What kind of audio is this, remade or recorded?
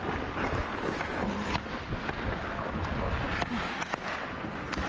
recorded